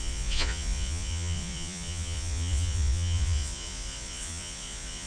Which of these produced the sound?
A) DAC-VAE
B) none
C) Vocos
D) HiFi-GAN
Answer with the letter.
C